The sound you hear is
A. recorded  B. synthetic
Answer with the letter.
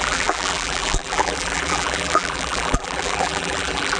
B